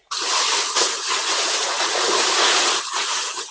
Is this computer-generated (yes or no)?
yes